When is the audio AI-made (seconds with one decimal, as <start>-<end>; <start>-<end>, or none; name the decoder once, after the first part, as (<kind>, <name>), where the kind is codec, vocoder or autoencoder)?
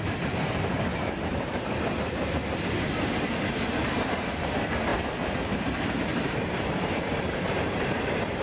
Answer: 0.0-8.4 (vocoder, BigVGAN v2)